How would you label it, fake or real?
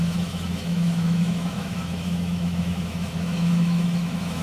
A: fake